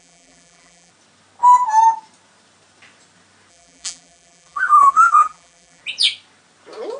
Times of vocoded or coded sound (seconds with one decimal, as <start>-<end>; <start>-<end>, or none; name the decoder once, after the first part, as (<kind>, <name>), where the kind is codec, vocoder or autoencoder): 0.0-0.9 (vocoder, BigVGAN v2); 3.5-5.8

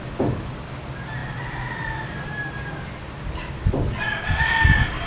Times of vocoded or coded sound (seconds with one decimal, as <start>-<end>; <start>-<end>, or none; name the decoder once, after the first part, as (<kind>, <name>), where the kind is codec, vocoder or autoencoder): none

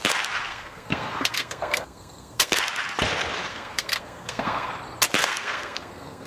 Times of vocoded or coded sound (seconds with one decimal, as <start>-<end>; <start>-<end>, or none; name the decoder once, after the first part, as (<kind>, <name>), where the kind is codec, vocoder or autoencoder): 0.5-2.6 (codec, SNAC); 3.4-4.7; 5.2-6.3

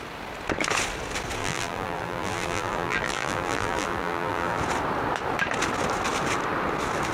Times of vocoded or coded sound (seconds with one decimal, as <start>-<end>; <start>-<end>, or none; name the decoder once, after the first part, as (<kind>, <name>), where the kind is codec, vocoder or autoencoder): 1.4-4.6 (vocoder, BigVGAN v2)

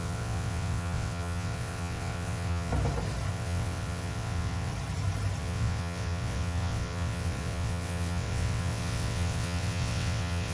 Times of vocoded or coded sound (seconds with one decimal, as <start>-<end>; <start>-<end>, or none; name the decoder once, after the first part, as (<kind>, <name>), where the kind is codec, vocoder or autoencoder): 0.0-2.7 (vocoder, WaveNeXt); 3.3-4.7; 5.4-10.5

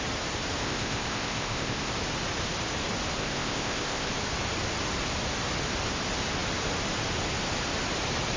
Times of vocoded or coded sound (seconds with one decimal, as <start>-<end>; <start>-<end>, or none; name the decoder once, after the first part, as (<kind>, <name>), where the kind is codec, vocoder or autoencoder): 0.6-1.9 (codec, ZipCodec); 3.2-4.1

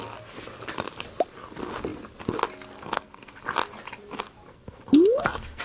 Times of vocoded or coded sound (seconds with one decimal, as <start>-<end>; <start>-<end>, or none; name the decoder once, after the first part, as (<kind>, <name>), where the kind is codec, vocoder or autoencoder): 2.8-3.3 (codec, SNAC); 4.5-5.6

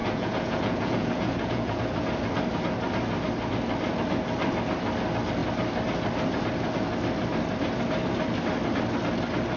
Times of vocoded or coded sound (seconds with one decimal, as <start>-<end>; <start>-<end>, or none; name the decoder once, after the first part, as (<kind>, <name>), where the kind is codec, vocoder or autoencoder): 0.0-1.8 (vocoder, Vocos)